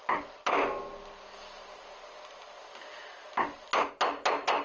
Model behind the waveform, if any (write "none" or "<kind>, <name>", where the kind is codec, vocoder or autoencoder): none